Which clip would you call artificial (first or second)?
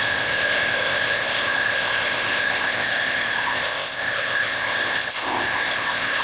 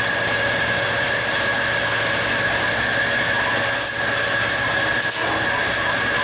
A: first